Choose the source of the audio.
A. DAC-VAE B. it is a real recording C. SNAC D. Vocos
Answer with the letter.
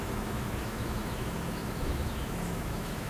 A